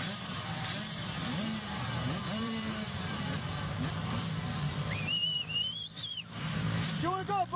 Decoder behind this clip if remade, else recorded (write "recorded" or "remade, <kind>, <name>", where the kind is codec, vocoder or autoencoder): remade, vocoder, BigVGAN v2